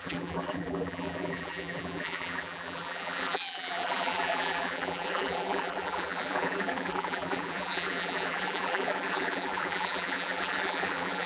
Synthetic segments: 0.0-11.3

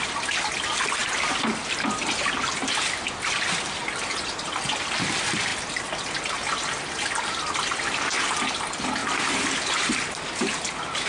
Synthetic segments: 1.0-2.0

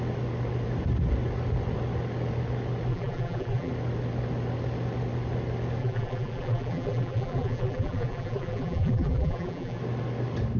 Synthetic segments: 2.9-3.7; 5.8-9.8

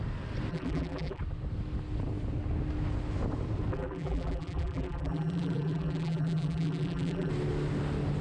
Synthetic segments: 0.5-1.2; 3.7-7.3

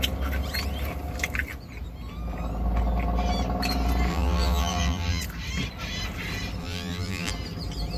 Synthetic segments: 4.1-5.2; 6.6-7.3